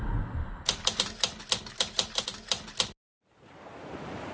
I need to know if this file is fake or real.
real